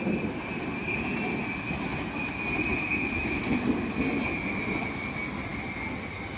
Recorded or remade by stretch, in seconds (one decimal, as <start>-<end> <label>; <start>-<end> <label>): 0.0-2.7 recorded; 2.7-3.4 remade; 3.4-6.4 recorded